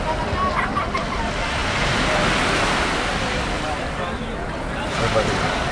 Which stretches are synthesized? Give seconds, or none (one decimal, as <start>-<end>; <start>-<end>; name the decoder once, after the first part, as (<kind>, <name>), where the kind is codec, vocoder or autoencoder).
none